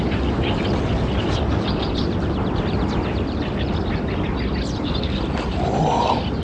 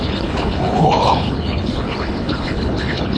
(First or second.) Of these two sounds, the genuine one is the first